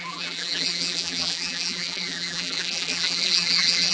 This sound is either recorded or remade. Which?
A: remade